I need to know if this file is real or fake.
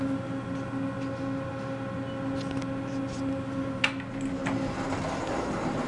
real